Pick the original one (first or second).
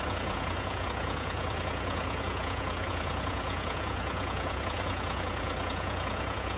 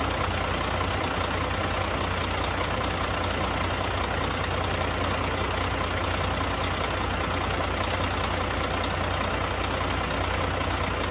second